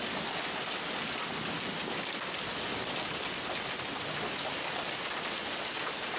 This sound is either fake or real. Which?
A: real